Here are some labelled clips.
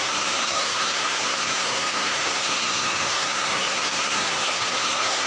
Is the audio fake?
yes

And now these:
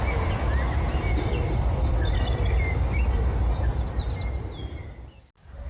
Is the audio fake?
no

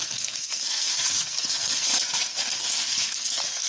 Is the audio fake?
yes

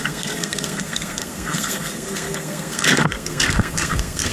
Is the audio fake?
yes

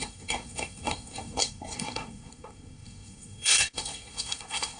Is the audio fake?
yes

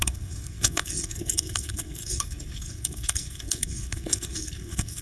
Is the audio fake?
yes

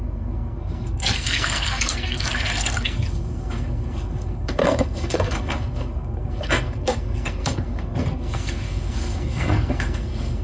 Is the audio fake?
yes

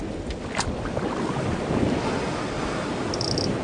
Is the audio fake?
no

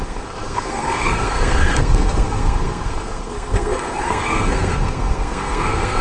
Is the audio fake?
yes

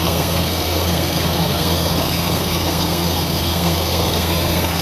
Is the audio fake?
yes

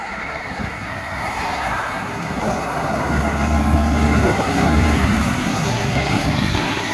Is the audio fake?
yes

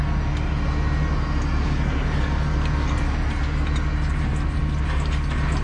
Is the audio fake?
no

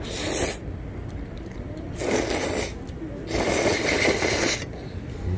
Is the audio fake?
no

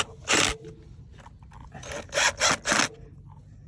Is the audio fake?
no